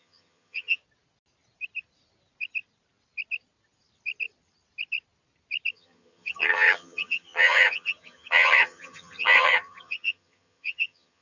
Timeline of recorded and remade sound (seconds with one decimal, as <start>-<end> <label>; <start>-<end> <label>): 0.0-0.8 remade; 0.8-5.7 recorded; 5.7-11.2 remade